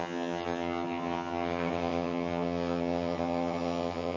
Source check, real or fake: fake